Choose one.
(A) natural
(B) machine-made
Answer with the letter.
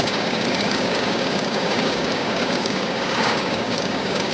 B